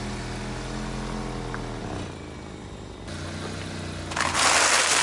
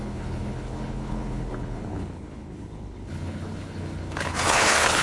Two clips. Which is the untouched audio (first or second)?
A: first